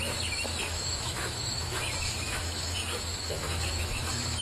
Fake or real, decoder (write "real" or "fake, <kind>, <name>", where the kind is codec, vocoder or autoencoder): fake, autoencoder, DAC-VAE